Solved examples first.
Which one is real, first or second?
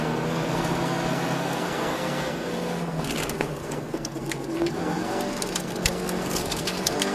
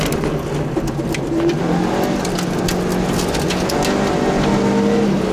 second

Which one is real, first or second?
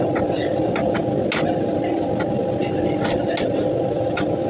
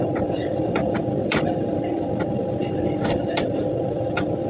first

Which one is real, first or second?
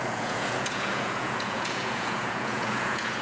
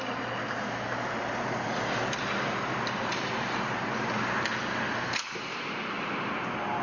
second